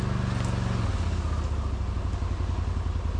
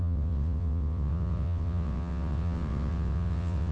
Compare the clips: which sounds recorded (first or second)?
first